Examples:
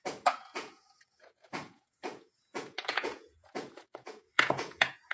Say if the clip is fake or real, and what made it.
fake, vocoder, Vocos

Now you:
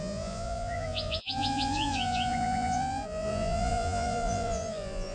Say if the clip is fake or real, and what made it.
fake, vocoder, Vocos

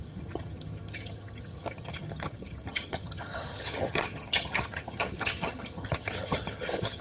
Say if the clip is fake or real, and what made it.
fake, vocoder, HiFi-GAN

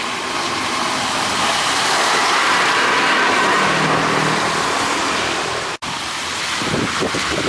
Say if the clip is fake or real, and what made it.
real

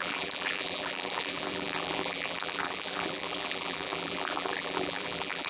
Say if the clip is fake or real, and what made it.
fake, vocoder, BigVGAN v2